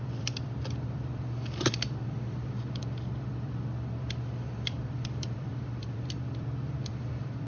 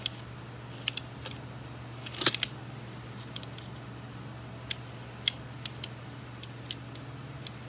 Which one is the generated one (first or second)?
first